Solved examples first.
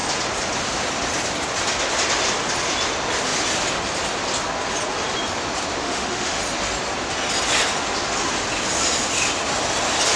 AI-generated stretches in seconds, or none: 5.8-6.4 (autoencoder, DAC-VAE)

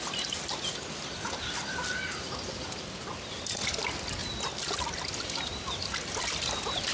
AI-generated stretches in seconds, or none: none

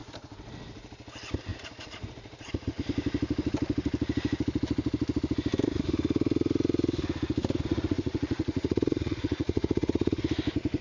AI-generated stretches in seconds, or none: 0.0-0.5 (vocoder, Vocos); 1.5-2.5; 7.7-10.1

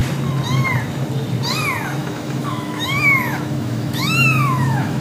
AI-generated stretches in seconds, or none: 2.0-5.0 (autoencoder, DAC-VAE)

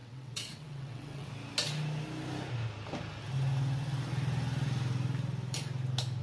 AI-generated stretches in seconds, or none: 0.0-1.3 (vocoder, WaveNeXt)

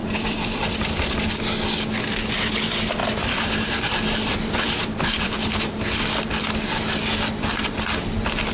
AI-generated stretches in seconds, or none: 0.0-1.9 (vocoder, BigVGAN v2); 3.0-5.8

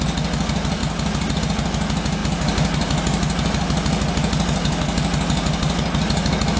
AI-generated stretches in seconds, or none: none

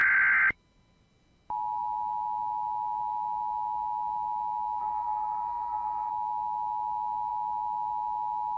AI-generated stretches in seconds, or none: 4.8-6.1 (codec, SNAC)